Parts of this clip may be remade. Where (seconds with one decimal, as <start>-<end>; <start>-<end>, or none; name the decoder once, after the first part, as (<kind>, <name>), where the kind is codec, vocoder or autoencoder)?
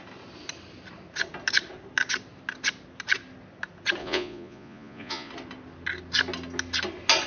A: 4.0-5.3 (vocoder, Vocos)